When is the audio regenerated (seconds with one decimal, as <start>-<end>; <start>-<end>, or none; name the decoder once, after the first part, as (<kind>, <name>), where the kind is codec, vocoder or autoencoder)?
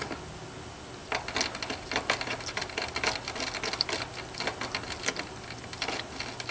none